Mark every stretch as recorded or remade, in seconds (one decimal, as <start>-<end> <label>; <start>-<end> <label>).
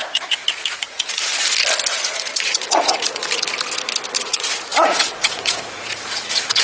0.0-1.3 remade; 1.3-1.9 recorded; 1.9-3.2 remade; 3.2-4.2 recorded; 4.2-6.6 remade